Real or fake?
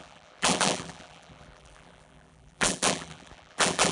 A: fake